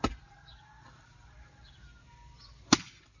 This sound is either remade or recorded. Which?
recorded